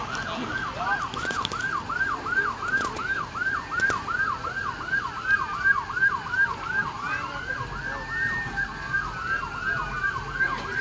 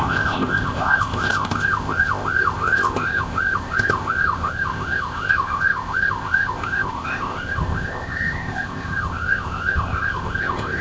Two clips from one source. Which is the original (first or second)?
first